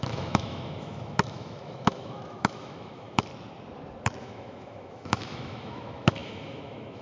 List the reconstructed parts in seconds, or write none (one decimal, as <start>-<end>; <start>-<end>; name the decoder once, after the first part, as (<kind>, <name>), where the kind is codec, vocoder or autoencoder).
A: 0.0-3.3 (autoencoder, DAC-VAE); 4.2-7.0

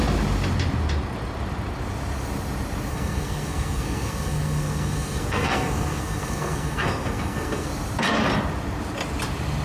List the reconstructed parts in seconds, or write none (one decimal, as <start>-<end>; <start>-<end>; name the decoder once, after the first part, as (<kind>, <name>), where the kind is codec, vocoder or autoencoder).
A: 2.9-7.7 (codec, SNAC)

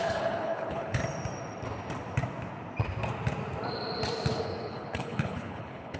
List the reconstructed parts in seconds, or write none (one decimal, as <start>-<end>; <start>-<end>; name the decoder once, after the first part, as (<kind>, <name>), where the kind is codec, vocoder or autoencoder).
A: 0.0-1.0 (codec, HILCodec); 4.4-6.0

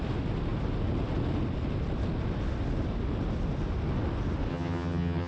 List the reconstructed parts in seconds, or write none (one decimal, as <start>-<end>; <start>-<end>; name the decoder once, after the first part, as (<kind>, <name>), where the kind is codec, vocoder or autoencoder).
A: 4.5-5.3 (vocoder, HiFi-GAN)